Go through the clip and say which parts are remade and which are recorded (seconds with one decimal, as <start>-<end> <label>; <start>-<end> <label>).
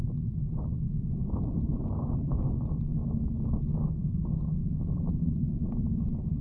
0.0-1.2 recorded; 1.2-2.5 remade; 2.5-4.6 recorded; 4.6-6.4 remade